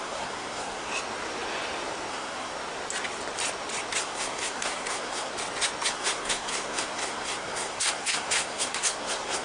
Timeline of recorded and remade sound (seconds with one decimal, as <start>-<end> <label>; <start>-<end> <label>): 0.0-0.9 remade; 0.9-2.1 recorded; 2.1-2.5 remade; 2.5-4.0 recorded; 4.0-5.3 remade; 5.3-5.9 recorded; 5.9-9.4 remade